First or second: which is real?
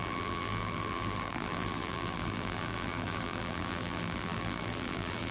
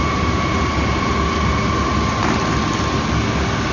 second